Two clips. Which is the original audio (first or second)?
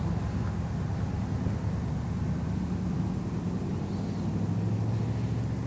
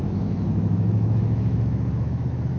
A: first